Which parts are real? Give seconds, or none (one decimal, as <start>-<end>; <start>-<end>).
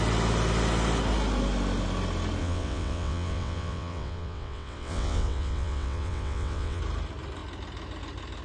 0.0-2.4; 6.8-8.4